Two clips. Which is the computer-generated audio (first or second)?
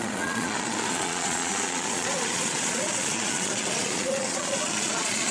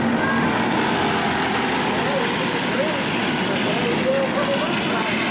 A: first